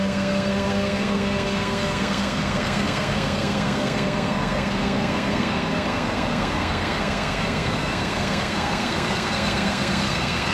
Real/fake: fake